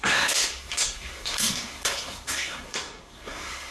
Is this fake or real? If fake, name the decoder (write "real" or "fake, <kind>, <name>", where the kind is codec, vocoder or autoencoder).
fake, codec, SNAC